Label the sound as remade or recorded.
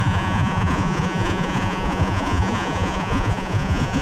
remade